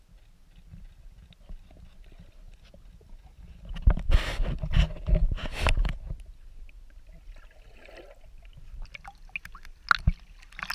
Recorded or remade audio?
recorded